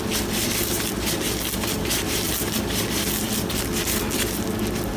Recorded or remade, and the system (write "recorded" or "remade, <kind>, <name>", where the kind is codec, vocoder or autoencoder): recorded